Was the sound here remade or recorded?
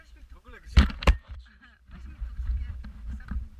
remade